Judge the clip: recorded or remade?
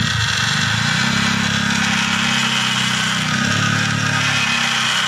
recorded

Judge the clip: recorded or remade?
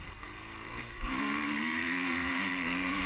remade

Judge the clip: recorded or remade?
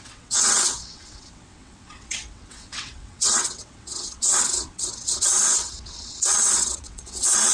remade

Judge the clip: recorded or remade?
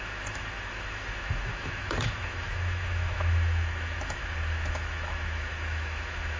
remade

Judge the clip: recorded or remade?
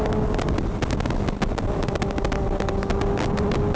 recorded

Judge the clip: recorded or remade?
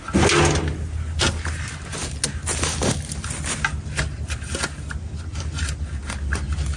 recorded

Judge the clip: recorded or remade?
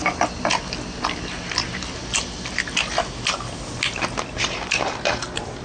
recorded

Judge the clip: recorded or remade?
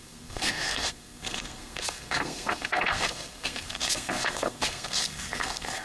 remade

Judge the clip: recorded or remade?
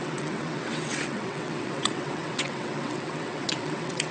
remade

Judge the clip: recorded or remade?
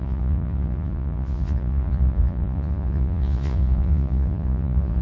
remade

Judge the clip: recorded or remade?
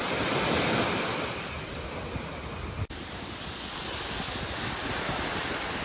recorded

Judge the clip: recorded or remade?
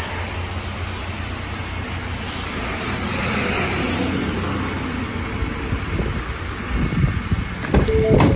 recorded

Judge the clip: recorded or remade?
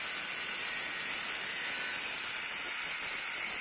recorded